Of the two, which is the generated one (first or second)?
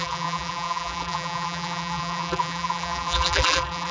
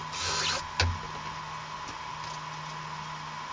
first